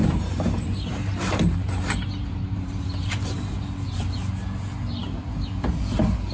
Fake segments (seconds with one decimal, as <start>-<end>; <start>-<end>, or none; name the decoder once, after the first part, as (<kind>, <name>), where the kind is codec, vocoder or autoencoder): 0.0-2.8 (vocoder, BigVGAN v2); 5.0-6.3